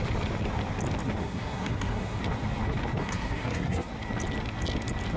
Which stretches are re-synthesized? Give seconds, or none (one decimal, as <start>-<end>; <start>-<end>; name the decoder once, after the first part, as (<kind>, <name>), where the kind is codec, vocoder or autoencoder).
1.2-2.2 (codec, SNAC); 3.0-3.9